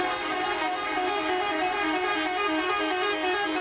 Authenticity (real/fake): real